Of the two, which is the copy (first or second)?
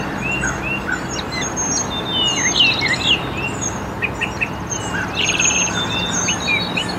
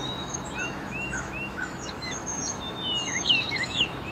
second